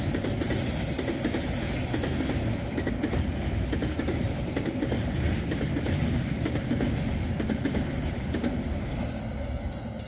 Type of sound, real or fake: real